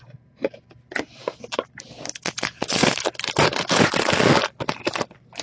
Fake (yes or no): no